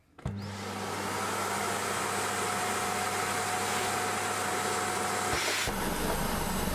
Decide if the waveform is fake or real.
real